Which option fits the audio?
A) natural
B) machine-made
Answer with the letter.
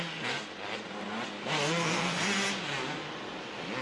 A